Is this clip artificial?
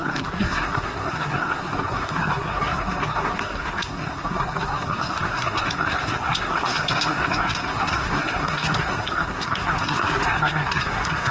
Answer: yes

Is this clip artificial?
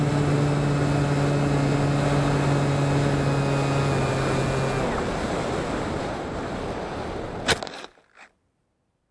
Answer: no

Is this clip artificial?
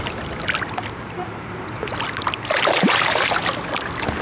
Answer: no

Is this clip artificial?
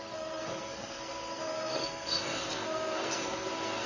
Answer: yes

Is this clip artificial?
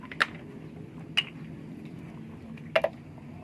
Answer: no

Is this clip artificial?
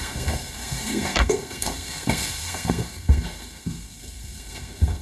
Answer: yes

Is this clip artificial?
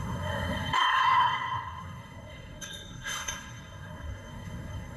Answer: yes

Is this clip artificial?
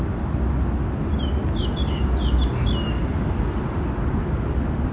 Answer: no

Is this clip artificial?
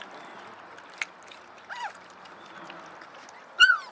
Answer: no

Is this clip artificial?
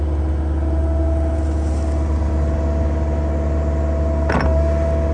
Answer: no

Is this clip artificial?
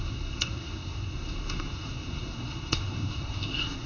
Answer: yes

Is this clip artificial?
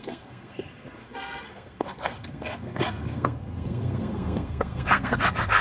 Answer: yes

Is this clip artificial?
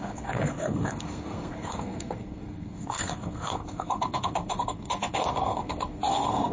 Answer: yes